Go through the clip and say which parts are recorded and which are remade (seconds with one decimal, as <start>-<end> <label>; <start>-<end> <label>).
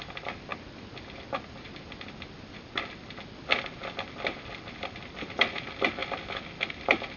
0.0-7.2 recorded